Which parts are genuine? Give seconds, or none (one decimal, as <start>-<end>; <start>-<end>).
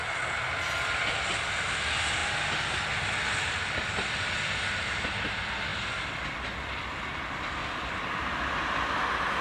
0.0-7.6; 9.0-9.4